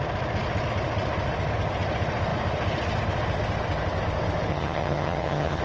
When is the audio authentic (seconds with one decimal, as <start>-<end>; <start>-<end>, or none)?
0.0-4.5